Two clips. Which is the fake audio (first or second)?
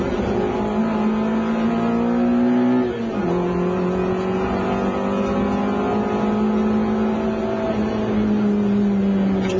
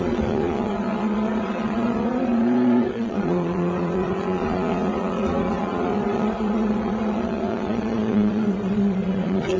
second